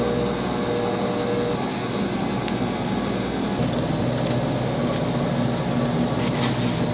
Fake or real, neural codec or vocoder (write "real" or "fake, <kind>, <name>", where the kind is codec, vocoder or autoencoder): real